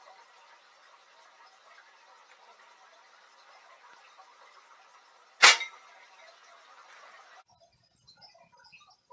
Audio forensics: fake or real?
real